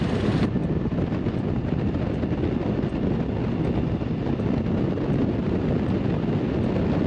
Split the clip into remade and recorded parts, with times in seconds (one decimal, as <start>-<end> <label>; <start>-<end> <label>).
0.0-7.1 recorded